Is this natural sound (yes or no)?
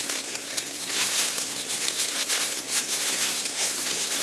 no